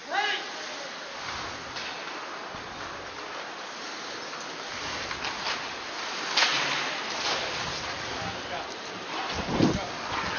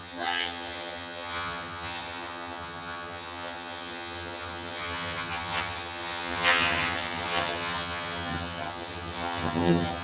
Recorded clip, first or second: first